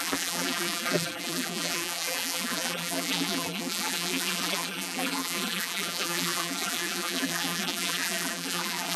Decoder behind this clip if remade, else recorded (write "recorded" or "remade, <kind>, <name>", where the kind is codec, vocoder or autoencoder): remade, vocoder, BigVGAN v2